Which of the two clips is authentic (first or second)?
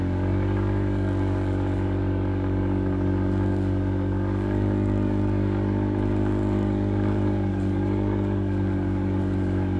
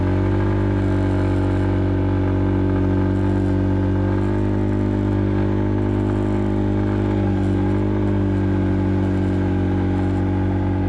second